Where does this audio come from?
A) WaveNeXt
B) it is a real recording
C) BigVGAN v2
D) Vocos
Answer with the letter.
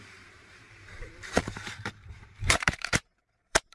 C